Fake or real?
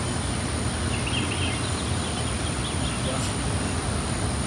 real